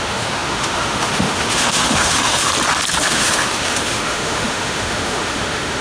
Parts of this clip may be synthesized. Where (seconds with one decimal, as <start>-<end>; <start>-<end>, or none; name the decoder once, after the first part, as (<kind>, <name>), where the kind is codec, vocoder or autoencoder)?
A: 0.0-2.5 (autoencoder, DAC-VAE); 3.0-5.8